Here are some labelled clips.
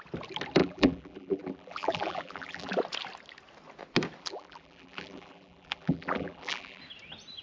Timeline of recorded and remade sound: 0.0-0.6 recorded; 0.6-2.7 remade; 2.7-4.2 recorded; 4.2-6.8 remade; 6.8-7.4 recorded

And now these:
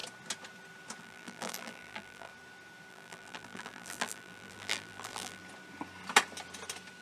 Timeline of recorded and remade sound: 0.0-1.0 recorded; 1.0-2.3 remade; 2.3-2.9 recorded; 2.9-5.4 remade; 5.4-7.0 recorded

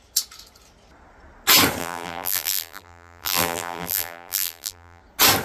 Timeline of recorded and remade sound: 0.0-1.8 recorded; 1.8-5.0 remade; 5.0-5.4 recorded

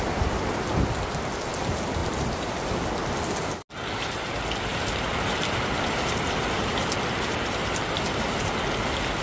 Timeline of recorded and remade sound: 0.0-2.0 recorded; 2.0-2.7 remade; 2.7-4.7 recorded; 4.7-8.2 remade; 8.2-9.2 recorded